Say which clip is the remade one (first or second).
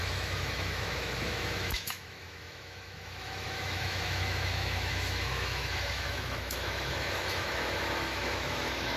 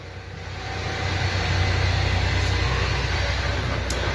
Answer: first